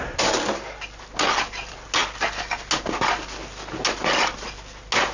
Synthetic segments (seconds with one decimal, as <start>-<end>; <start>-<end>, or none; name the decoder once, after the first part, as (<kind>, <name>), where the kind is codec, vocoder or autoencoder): none

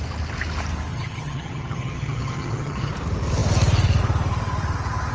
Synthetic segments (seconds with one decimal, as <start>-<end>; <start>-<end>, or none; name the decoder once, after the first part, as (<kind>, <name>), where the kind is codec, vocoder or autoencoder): 0.9-2.9 (vocoder, HiFi-GAN)

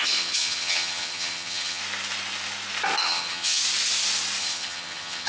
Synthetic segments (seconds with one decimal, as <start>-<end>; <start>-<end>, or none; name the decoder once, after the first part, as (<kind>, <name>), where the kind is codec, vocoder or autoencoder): 0.0-1.8 (vocoder, HiFi-GAN); 3.0-3.6; 4.4-5.3

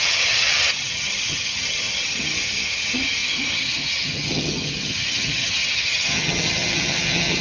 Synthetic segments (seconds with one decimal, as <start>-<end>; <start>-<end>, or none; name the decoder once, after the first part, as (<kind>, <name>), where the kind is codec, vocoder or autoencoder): 0.0-7.4 (vocoder, HiFi-GAN)

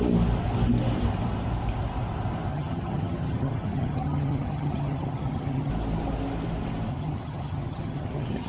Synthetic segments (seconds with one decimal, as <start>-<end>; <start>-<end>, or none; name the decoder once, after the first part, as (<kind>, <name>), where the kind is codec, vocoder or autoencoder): 2.5-5.7 (vocoder, HiFi-GAN); 6.9-8.5

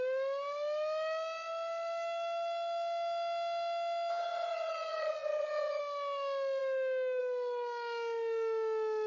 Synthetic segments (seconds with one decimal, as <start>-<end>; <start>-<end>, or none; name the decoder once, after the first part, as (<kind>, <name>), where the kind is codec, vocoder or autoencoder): 4.1-5.8 (vocoder, HiFi-GAN)

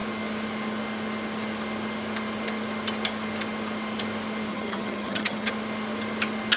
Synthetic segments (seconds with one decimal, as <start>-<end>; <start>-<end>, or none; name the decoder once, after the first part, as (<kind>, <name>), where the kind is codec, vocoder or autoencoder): 4.5-5.5 (vocoder, HiFi-GAN)